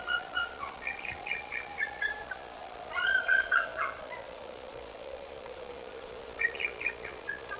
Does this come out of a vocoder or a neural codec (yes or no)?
yes